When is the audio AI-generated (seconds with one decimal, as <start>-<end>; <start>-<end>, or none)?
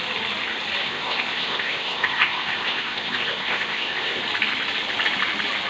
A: 0.8-4.2